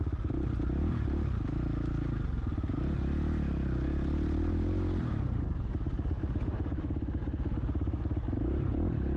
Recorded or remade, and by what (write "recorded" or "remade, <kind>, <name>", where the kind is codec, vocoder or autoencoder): recorded